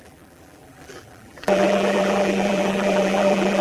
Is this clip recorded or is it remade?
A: remade